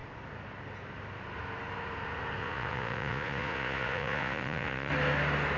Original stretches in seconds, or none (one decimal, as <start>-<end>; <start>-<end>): 0.0-2.4; 4.9-5.6